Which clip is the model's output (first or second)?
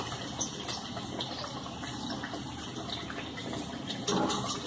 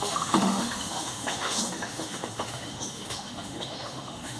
second